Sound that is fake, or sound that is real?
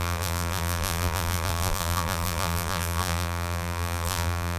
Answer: fake